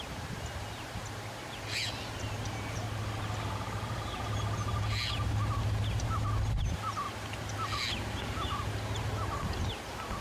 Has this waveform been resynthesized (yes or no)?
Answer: no